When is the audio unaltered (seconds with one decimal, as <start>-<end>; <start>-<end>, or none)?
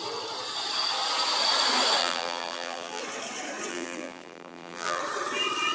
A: 0.0-2.0; 3.0-3.7; 5.0-5.7